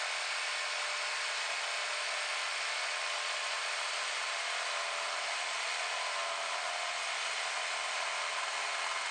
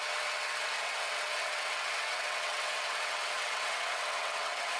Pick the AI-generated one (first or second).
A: second